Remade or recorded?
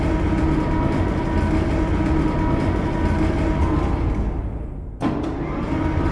recorded